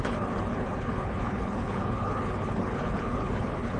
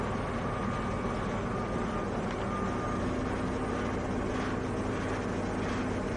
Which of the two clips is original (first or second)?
second